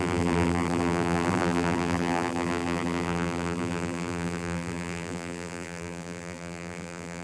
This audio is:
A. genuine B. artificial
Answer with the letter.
B